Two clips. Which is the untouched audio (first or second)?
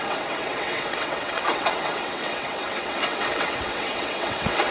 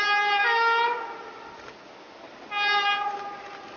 second